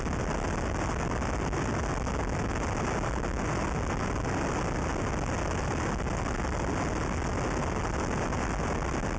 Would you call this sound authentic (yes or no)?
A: yes